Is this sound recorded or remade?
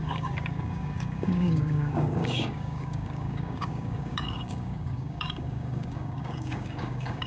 remade